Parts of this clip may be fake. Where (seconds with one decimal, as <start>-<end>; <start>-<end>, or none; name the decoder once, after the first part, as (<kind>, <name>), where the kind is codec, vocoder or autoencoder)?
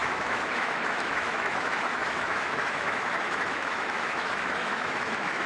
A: 0.0-5.5 (autoencoder, DAC-VAE)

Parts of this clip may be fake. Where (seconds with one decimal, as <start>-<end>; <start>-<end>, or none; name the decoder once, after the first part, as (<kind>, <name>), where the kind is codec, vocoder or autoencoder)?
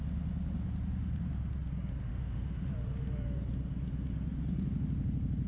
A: 2.1-2.7 (autoencoder, DAC-VAE)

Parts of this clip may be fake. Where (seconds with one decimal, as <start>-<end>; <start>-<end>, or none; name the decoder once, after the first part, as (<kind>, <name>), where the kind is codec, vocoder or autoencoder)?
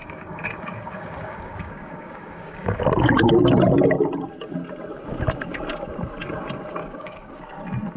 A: 0.0-2.8 (codec, DAC); 6.8-7.4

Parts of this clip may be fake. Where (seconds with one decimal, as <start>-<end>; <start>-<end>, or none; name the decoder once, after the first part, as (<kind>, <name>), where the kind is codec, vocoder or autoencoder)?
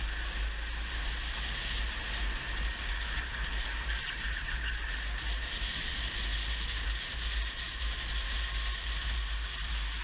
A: none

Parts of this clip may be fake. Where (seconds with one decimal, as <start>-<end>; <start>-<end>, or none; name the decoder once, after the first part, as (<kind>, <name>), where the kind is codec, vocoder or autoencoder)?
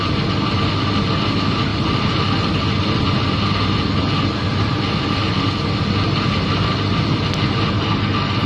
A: none